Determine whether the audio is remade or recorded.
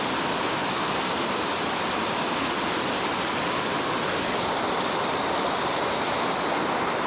recorded